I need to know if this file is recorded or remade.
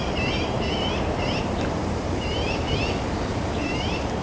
remade